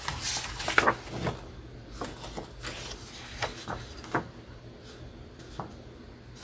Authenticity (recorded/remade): recorded